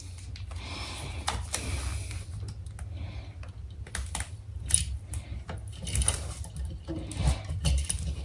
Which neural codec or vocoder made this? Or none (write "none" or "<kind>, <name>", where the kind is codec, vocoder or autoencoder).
none